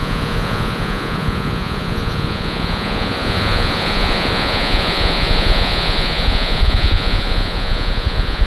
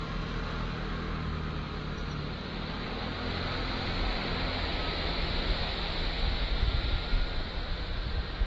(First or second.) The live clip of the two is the second